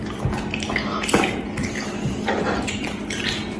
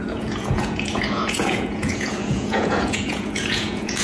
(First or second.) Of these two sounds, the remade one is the second